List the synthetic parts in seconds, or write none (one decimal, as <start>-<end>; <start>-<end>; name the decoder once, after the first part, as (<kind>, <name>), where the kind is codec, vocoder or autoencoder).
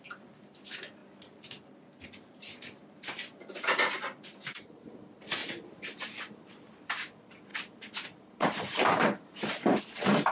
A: 1.0-5.0 (vocoder, BigVGAN v2); 5.4-6.9; 7.5-9.8